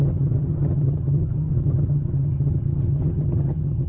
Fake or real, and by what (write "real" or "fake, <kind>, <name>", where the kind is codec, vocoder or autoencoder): fake, vocoder, HiFi-GAN